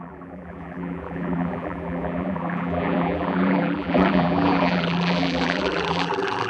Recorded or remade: remade